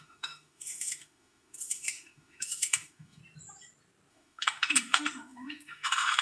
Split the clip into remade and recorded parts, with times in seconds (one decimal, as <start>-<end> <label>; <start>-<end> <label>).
0.0-3.2 remade; 3.2-4.1 recorded; 4.1-6.2 remade